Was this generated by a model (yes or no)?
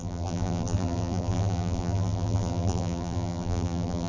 yes